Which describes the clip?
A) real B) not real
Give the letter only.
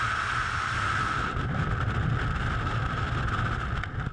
A